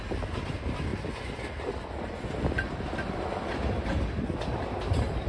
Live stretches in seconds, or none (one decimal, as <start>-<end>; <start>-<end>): 0.0-5.3